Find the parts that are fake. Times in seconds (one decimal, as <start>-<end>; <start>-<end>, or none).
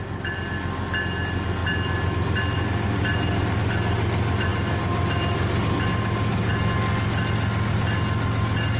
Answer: none